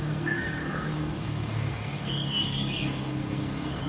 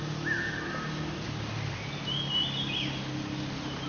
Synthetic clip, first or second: first